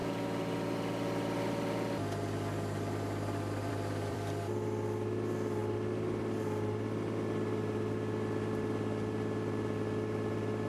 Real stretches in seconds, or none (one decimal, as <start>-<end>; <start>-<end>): 0.0-3.7; 5.6-6.4

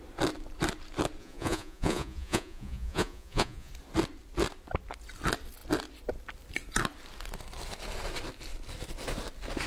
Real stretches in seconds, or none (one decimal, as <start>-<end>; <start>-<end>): 0.0-1.2; 3.7-9.7